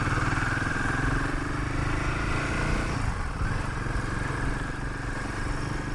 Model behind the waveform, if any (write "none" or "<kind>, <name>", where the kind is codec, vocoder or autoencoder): none